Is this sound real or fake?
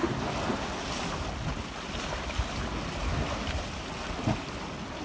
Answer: real